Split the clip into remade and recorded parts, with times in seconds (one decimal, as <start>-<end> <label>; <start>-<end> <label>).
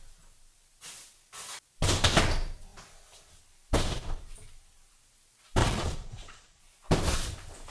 0.0-5.6 recorded; 5.6-6.6 remade; 6.6-7.7 recorded